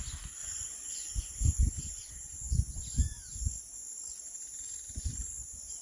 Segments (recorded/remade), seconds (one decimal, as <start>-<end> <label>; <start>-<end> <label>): 0.0-0.4 recorded; 0.4-1.6 remade; 1.6-2.0 recorded; 2.0-3.5 remade; 3.5-5.8 recorded